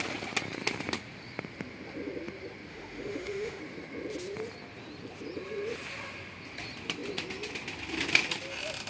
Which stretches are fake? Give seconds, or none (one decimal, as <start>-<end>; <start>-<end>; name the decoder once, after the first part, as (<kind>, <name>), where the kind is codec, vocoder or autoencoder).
2.7-3.6 (autoencoder, DAC-VAE)